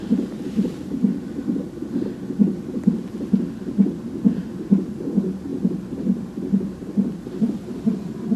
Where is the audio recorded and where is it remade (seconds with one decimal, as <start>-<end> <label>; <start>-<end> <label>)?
0.0-1.1 remade; 1.1-8.4 recorded